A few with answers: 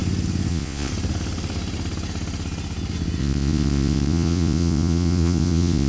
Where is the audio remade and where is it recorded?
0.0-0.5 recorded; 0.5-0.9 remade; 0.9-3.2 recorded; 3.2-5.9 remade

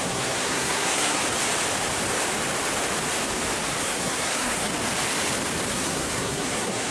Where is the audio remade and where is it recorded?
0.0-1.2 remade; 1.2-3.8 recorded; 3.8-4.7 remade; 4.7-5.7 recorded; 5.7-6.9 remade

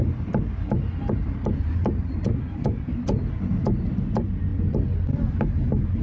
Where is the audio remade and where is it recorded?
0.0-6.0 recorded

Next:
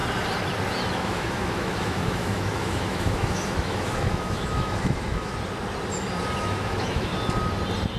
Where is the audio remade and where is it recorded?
0.0-0.9 recorded; 0.9-5.3 remade; 5.3-6.4 recorded; 6.4-7.1 remade; 7.1-8.0 recorded

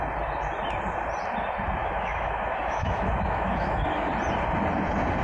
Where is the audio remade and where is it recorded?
0.0-1.8 recorded; 1.8-4.1 remade; 4.1-5.2 recorded